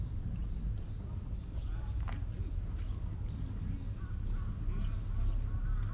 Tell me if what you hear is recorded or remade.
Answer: recorded